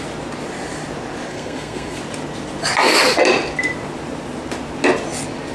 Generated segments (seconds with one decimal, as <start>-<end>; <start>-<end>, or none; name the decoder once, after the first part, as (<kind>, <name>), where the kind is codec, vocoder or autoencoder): 1.3-2.0 (codec, SNAC)